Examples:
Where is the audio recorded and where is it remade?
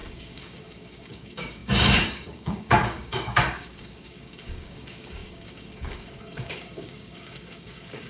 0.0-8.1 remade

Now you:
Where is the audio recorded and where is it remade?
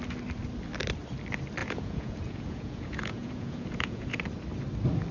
0.0-1.6 recorded; 1.6-4.2 remade; 4.2-5.1 recorded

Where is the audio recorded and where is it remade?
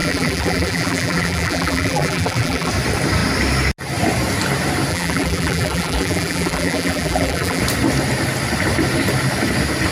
0.0-2.7 remade; 2.7-4.9 recorded; 4.9-7.6 remade; 7.6-9.9 recorded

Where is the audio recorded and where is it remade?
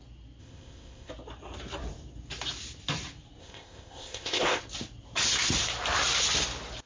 0.0-0.4 recorded; 0.4-1.1 remade; 1.1-3.4 recorded; 3.4-4.6 remade; 4.6-6.9 recorded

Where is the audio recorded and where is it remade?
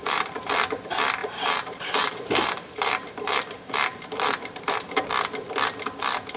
0.0-0.5 remade; 0.5-1.2 recorded; 1.2-5.0 remade; 5.0-6.4 recorded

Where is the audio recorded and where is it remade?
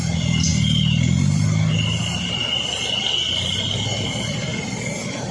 0.0-5.3 recorded